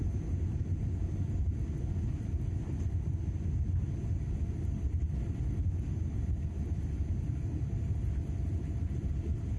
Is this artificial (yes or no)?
no